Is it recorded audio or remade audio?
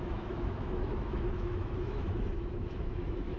remade